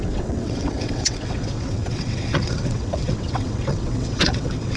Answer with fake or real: fake